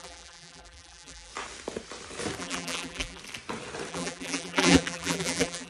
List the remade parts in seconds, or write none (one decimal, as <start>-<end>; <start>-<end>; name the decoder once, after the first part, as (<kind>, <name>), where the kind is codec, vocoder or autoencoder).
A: 0.0-1.3 (vocoder, BigVGAN v2); 2.4-3.2; 3.9-5.7